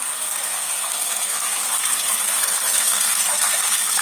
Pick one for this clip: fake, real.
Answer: fake